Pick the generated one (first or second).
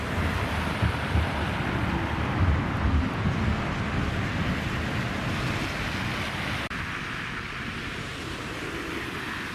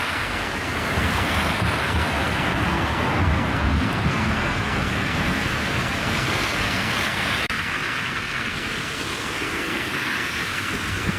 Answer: second